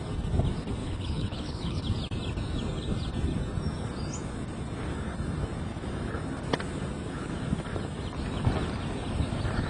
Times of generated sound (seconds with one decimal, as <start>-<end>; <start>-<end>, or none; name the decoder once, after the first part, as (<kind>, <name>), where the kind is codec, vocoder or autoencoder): 0.8-1.8 (codec, HILCodec)